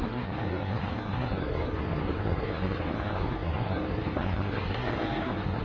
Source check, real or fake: fake